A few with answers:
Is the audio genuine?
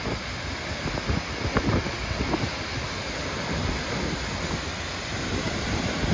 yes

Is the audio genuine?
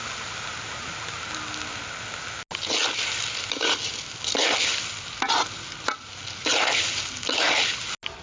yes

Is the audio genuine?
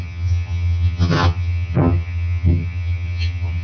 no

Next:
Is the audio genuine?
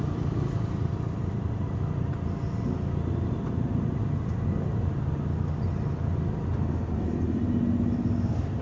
yes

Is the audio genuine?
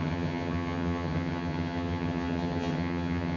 no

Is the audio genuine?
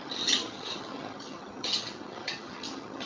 no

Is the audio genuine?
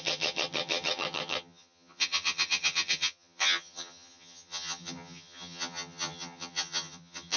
no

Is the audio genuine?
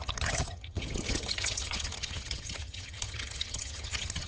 no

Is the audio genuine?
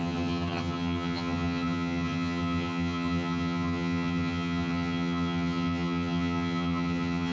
no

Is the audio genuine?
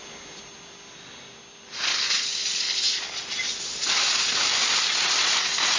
yes